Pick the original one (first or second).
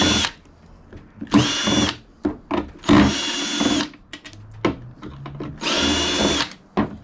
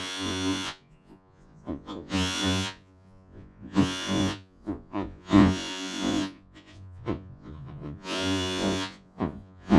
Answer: first